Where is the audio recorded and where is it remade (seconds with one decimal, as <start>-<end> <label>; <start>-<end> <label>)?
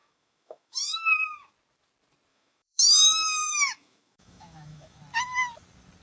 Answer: 0.0-1.5 remade; 1.5-2.3 recorded; 2.3-5.0 remade; 5.0-6.0 recorded